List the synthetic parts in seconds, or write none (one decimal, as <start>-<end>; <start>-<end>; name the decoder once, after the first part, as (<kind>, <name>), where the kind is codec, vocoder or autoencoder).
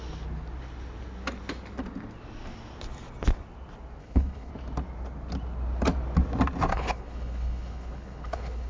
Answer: 4.0-4.5 (codec, HILCodec); 6.7-8.7